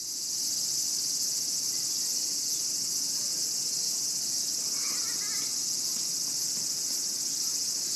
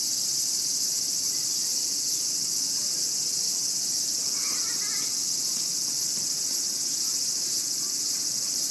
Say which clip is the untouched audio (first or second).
first